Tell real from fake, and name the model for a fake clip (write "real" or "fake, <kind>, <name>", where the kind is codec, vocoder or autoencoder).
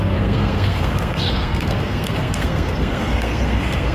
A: fake, codec, SNAC